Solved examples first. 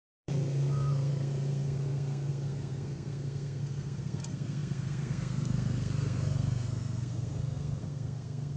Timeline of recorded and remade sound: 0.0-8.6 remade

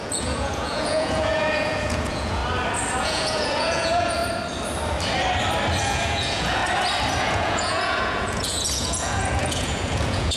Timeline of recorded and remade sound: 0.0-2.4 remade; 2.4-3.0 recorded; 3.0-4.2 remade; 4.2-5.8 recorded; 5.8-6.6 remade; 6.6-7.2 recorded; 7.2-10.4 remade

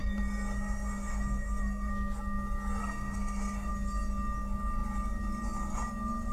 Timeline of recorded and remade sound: 0.0-1.9 remade; 1.9-2.8 recorded; 2.8-3.7 remade; 3.7-6.3 recorded

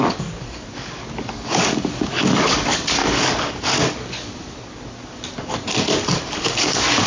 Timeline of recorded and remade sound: 0.0-7.1 remade

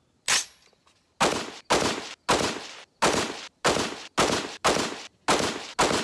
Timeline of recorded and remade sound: 0.0-6.0 recorded

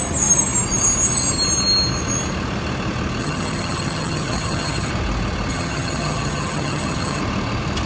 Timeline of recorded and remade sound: 0.0-3.2 recorded; 3.2-4.9 remade; 4.9-5.5 recorded; 5.5-7.2 remade; 7.2-7.9 recorded

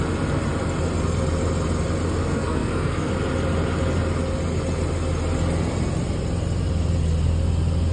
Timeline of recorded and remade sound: 0.0-2.2 recorded; 2.2-3.1 remade; 3.1-7.9 recorded